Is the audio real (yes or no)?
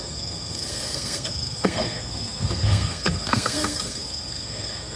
no